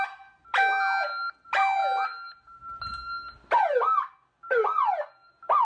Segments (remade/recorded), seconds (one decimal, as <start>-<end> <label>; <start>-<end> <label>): 0.0-5.6 recorded